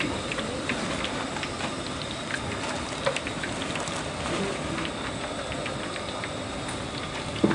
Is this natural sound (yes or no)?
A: yes